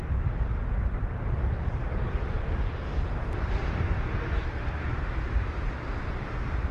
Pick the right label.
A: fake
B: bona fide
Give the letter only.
B